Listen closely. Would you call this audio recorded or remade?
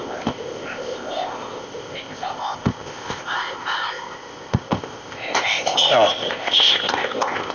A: remade